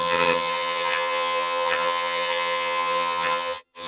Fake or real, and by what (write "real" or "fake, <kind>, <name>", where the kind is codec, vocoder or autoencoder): fake, vocoder, HiFi-GAN